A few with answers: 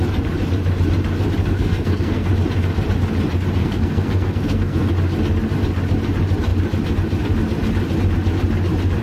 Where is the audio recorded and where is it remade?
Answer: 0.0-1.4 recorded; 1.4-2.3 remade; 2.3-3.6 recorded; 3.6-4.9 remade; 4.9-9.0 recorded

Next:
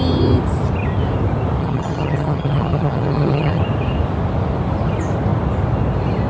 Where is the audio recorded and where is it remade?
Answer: 0.0-1.6 recorded; 1.6-3.6 remade; 3.6-6.3 recorded

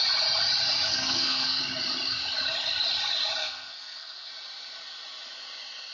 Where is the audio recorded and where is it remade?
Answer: 0.0-0.9 recorded; 0.9-1.6 remade; 1.6-3.4 recorded; 3.4-4.3 remade; 4.3-5.9 recorded

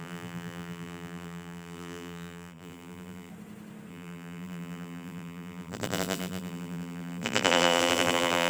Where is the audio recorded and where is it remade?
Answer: 0.0-3.3 remade; 3.3-3.9 recorded; 3.9-8.5 remade

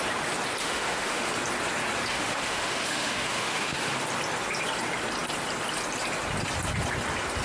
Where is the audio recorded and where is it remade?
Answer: 0.0-0.6 recorded; 0.6-1.3 remade; 1.3-2.1 recorded; 2.1-3.9 remade; 3.9-7.4 recorded